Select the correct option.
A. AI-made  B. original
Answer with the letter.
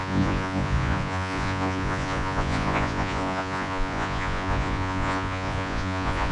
A